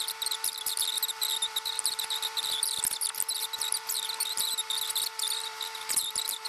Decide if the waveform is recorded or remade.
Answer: recorded